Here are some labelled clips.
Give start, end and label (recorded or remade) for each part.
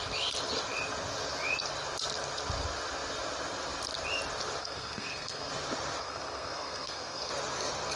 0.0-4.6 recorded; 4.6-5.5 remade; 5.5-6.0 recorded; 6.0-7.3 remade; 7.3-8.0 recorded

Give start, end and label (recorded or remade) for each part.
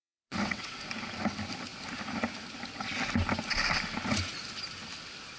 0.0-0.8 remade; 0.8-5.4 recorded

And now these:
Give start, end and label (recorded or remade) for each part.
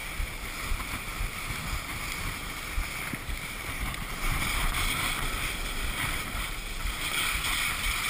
0.0-8.1 remade